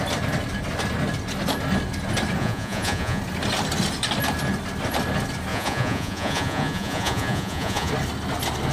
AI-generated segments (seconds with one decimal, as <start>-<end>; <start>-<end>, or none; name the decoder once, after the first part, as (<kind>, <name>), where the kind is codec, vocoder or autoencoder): 2.4-3.2 (vocoder, Vocos); 5.5-7.9